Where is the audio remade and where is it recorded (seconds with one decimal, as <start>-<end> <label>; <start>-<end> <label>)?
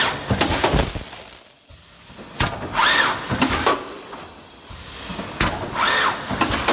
0.0-6.7 recorded